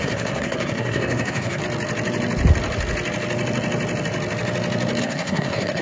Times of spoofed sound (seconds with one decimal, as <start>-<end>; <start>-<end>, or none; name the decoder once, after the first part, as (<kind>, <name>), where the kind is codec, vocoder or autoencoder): 0.0-1.6 (codec, SNAC); 5.0-5.8